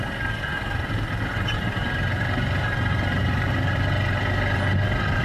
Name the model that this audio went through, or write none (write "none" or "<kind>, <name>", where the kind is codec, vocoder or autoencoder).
none